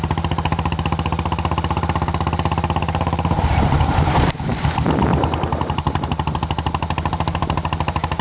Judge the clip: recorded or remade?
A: remade